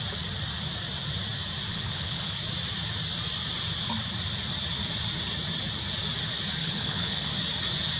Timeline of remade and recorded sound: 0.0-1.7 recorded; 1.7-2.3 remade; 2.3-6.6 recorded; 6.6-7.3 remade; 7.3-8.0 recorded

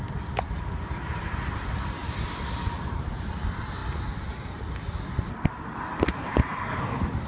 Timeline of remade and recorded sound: 0.0-7.3 recorded